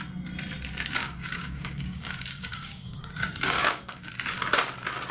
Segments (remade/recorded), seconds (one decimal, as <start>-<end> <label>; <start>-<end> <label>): 0.0-1.0 recorded; 1.0-4.1 remade; 4.1-5.1 recorded